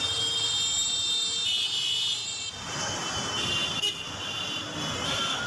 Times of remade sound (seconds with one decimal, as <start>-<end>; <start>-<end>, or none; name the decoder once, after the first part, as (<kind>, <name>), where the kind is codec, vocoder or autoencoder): none